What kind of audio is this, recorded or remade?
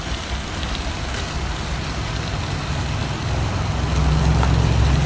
recorded